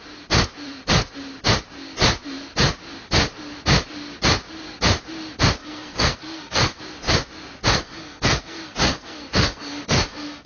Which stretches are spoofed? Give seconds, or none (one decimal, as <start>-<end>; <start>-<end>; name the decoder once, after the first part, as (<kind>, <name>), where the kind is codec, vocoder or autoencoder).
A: 5.6-6.8 (codec, SNAC); 7.7-10.5